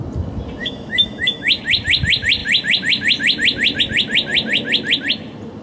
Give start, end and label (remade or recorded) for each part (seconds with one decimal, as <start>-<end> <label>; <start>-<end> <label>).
0.0-0.6 recorded; 0.6-1.6 remade; 1.6-5.6 recorded